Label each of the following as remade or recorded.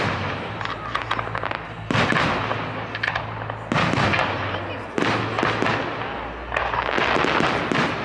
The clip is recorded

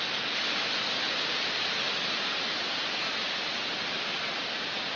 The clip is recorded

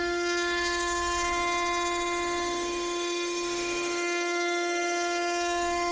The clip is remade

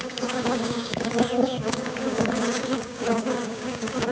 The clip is remade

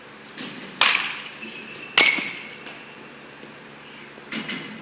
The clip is recorded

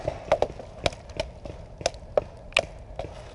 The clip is recorded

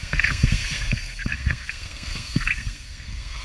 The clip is remade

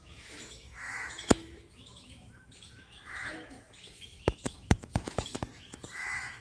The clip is remade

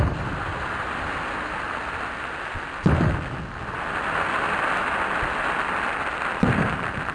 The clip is recorded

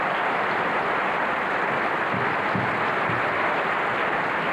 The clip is recorded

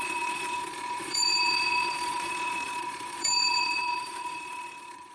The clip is remade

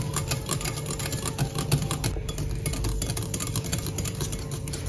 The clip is recorded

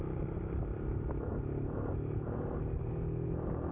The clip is recorded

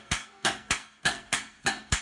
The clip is remade